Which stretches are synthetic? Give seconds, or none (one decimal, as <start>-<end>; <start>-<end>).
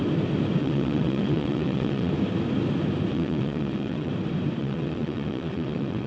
0.6-2.1; 3.1-4.1; 4.6-6.1